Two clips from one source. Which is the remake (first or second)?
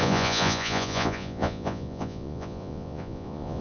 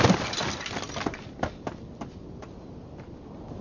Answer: first